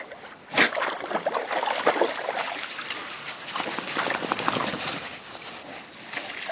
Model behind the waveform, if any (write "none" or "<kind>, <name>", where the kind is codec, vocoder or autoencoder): none